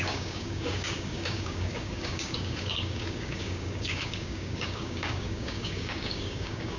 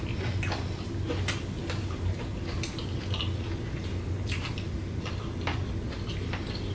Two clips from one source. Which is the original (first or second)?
second